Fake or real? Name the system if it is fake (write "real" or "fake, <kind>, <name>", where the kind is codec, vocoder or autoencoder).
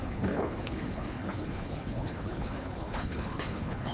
fake, codec, HILCodec